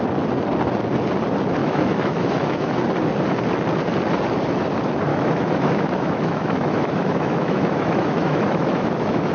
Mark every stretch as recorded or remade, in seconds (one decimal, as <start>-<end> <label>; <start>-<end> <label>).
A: 0.0-1.6 recorded; 1.6-2.8 remade; 2.8-5.1 recorded; 5.1-9.3 remade